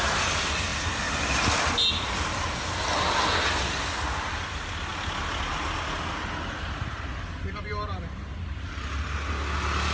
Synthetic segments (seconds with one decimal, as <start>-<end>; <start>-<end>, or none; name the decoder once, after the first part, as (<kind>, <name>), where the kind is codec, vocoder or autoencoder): none